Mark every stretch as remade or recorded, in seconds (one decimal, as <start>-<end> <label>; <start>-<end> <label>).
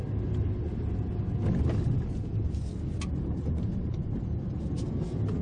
0.0-3.2 recorded; 3.2-5.4 remade